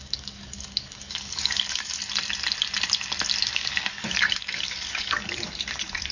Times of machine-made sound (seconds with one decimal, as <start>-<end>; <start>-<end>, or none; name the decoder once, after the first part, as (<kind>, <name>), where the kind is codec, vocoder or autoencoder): 0.0-2.0 (codec, DAC); 3.5-6.1